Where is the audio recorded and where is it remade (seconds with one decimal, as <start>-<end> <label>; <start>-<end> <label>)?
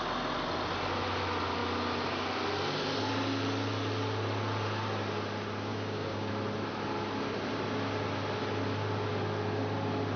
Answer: 0.0-5.7 recorded; 5.7-6.3 remade; 6.3-10.2 recorded